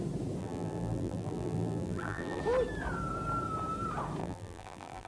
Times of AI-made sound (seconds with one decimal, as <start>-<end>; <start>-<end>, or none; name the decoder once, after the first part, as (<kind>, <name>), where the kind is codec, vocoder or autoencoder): 0.4-2.4 (vocoder, BigVGAN v2); 4.2-5.1